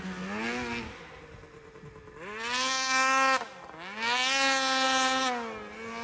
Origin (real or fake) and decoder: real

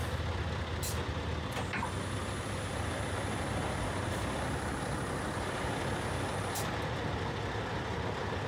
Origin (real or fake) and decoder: real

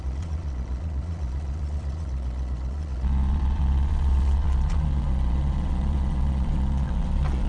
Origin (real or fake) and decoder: fake, vocoder, Vocos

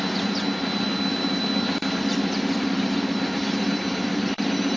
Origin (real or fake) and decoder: fake, vocoder, BigVGAN v2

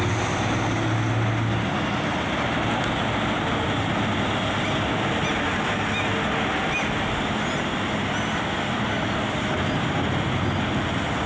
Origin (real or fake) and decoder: real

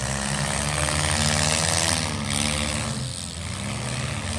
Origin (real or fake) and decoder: real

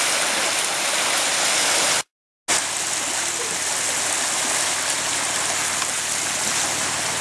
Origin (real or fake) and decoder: real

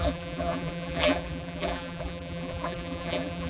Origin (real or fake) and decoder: fake, vocoder, BigVGAN v2